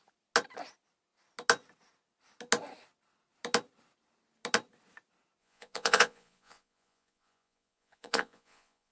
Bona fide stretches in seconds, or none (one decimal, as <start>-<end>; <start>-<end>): 0.0-5.4